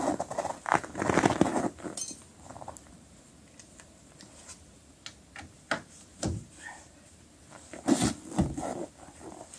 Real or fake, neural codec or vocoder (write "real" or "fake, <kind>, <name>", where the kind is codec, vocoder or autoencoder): real